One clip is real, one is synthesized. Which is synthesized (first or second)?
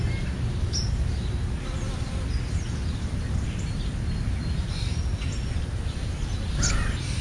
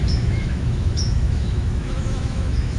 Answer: second